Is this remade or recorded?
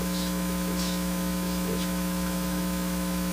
remade